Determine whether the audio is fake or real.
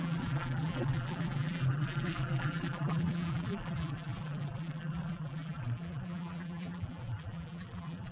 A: fake